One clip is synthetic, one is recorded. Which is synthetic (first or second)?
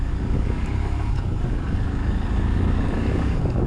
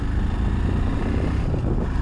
first